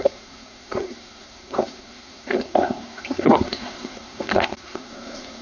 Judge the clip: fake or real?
fake